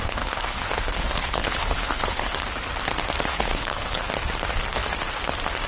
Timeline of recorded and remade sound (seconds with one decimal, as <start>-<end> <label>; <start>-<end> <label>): 0.0-2.3 remade; 2.3-3.3 recorded; 3.3-4.1 remade; 4.1-5.7 recorded